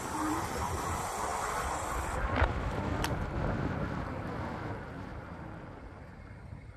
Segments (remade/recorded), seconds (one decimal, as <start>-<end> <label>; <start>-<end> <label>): 0.0-6.8 recorded